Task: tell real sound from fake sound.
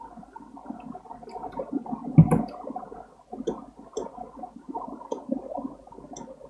real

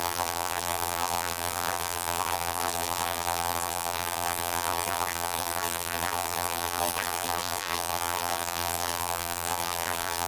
fake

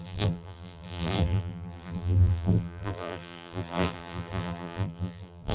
fake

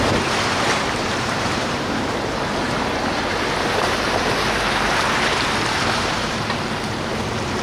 fake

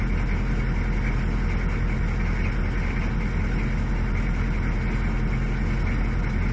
real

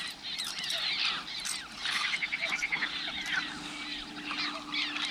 real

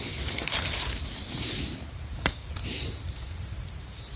fake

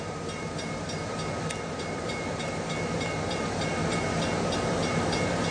fake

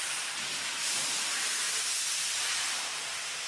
fake